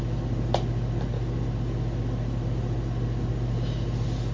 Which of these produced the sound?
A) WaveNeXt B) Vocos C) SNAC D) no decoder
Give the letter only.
D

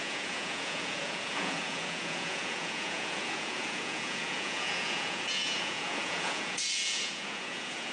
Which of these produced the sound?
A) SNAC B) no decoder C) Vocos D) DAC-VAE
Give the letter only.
C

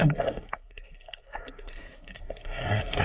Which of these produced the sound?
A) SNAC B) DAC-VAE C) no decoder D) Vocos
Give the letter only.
A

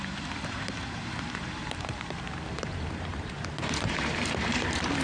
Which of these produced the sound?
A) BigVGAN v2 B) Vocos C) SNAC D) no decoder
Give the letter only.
A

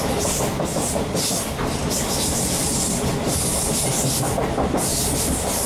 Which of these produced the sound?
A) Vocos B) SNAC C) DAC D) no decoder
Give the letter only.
D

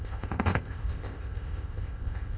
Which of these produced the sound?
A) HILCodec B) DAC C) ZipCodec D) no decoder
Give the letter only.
C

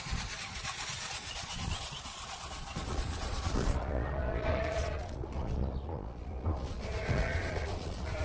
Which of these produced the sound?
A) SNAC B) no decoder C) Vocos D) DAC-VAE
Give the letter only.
C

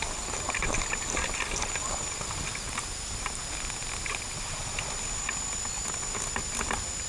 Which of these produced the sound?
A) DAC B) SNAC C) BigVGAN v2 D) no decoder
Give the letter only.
D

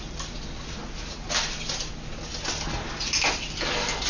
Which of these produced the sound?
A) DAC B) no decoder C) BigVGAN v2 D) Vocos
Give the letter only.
B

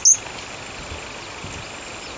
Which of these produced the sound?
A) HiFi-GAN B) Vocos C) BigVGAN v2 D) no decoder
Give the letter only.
D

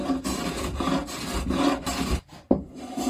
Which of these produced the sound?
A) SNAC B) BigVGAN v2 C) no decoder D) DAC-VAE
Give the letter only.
C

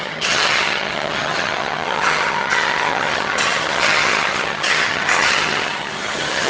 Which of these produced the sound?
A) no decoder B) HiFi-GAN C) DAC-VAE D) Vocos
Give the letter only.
B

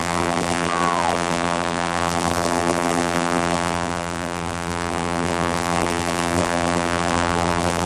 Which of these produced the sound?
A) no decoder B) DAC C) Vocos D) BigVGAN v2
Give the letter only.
D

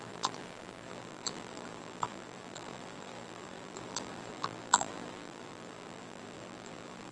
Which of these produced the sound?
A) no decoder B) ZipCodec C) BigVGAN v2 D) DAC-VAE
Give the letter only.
C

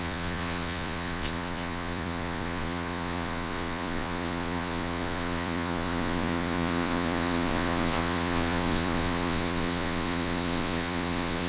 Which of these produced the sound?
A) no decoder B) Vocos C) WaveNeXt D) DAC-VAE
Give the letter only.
B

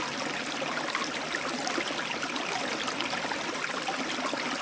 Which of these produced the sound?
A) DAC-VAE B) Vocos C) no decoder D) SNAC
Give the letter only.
C